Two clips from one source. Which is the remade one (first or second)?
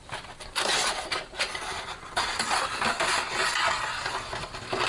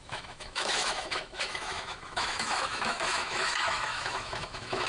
second